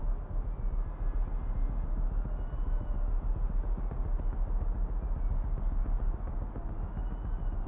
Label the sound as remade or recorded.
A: recorded